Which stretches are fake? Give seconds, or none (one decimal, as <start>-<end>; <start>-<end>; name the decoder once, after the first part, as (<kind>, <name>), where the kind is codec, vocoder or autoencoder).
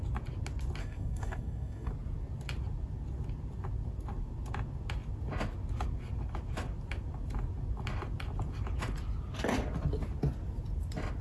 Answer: 0.8-1.9 (codec, DAC)